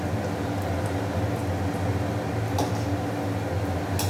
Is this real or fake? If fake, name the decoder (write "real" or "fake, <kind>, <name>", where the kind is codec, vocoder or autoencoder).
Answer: real